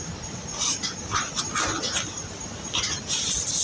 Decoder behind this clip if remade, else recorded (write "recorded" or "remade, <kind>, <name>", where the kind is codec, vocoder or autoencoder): recorded